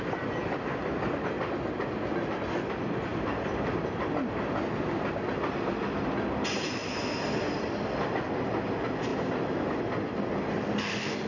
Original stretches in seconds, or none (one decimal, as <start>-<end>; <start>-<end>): 0.0-6.8; 8.1-11.3